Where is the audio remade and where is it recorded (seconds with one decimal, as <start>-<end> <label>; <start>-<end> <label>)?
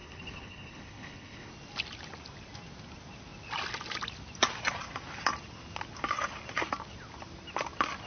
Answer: 0.0-1.5 remade; 1.5-8.1 recorded